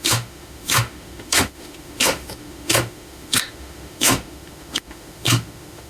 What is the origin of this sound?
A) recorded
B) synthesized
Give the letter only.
B